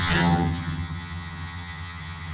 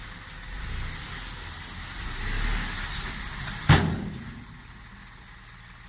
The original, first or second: second